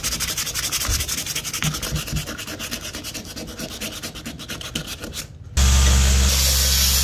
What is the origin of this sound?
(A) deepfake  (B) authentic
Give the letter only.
B